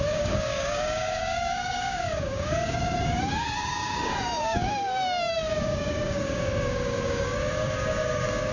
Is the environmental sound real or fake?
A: fake